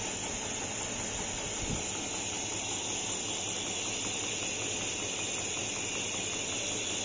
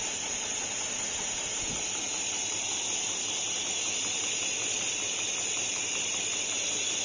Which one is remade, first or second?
second